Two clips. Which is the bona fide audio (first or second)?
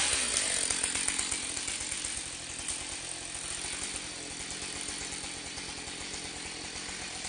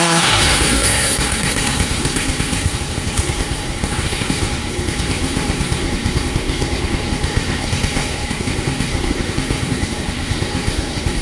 first